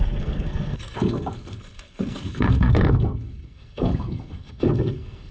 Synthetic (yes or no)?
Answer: yes